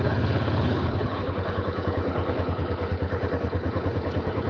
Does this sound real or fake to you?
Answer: fake